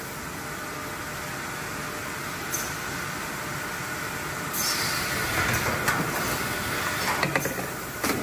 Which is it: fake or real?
real